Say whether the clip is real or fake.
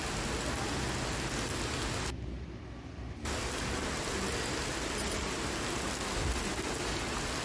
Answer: real